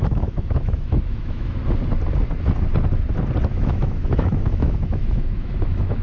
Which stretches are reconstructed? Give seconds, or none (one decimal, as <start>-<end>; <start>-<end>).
0.0-1.6; 3.5-6.0

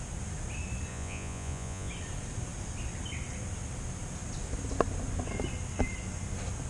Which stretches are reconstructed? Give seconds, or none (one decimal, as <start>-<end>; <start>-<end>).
0.9-1.9